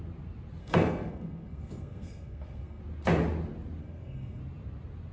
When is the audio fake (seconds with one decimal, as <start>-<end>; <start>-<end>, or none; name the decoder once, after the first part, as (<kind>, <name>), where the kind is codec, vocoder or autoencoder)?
0.6-2.8 (codec, SNAC); 3.8-4.4